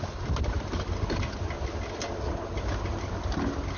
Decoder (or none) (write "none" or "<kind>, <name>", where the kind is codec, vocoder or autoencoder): none